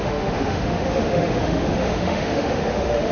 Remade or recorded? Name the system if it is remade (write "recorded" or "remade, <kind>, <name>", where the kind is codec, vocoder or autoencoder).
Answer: remade, autoencoder, DAC-VAE